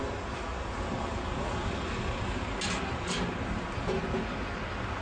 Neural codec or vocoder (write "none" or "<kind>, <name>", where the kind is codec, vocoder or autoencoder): none